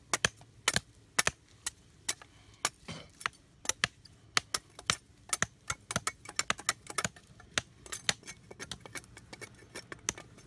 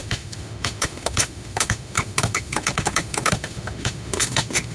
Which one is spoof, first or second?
second